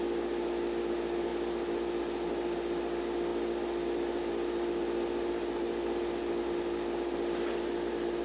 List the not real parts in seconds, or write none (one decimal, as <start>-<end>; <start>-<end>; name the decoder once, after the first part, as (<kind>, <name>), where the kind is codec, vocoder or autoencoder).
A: none